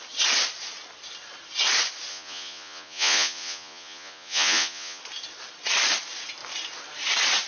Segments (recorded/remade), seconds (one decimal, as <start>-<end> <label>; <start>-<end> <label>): 0.0-2.1 recorded; 2.1-5.0 remade; 5.0-7.5 recorded